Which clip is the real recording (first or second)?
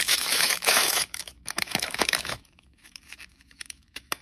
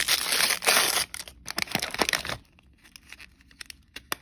second